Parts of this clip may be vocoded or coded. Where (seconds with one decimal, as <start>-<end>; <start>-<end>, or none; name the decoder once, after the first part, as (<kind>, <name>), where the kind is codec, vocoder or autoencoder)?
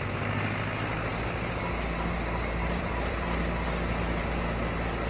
2.6-4.0 (vocoder, BigVGAN v2)